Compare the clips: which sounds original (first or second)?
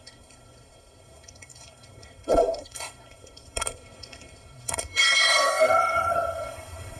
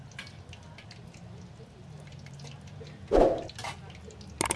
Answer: second